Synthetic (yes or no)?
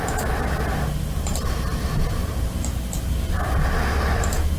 no